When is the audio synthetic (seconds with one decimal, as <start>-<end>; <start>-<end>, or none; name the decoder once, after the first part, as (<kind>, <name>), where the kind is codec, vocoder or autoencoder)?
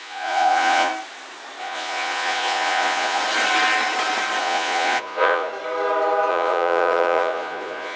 0.0-0.9 (vocoder, Vocos); 1.6-3.2; 4.4-5.5; 6.3-8.0